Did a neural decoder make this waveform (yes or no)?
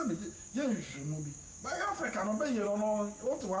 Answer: yes